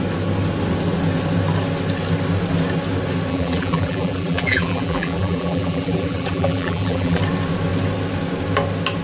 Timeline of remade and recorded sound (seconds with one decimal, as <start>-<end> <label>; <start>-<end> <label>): 0.0-3.3 recorded; 3.3-7.2 remade; 7.2-9.0 recorded